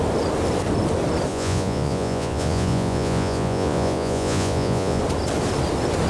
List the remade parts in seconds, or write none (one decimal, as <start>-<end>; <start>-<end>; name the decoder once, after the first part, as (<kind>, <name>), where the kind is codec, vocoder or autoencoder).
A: 1.3-5.0 (vocoder, Vocos)